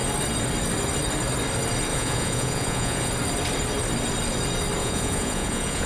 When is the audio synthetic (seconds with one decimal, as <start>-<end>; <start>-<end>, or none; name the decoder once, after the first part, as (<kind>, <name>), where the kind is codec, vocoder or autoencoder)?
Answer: 1.9-3.1 (vocoder, Vocos); 4.8-5.9